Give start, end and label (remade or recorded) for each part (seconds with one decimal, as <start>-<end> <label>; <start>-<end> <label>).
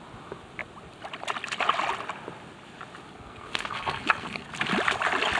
0.0-3.1 recorded; 3.1-4.5 remade; 4.5-5.4 recorded